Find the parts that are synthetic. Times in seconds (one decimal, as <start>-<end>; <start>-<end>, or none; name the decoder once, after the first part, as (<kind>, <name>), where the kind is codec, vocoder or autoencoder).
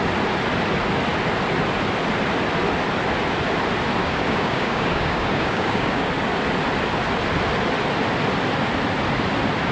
4.0-6.1 (codec, DAC)